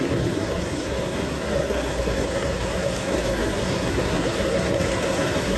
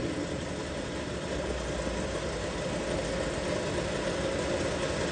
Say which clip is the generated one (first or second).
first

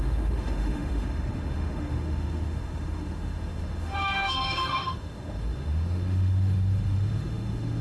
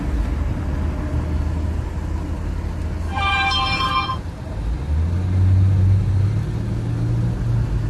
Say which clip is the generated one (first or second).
first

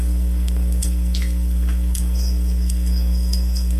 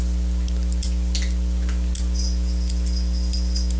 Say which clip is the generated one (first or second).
first